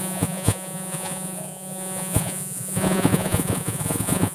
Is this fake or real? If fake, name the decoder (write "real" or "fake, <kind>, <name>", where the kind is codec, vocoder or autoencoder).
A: fake, vocoder, Vocos